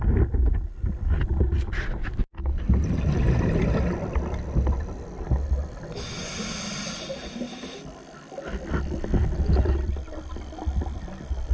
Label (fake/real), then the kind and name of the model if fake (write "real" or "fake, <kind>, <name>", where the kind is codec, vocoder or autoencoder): real